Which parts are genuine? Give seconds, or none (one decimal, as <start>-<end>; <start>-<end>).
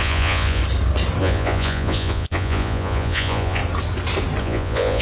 0.6-1.2; 3.6-4.4